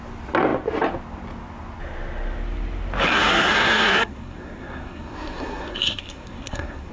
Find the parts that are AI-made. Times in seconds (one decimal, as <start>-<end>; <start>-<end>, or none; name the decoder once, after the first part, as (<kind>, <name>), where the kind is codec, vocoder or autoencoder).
3.1-6.9 (codec, SNAC)